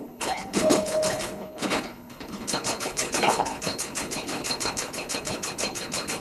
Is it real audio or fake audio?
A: fake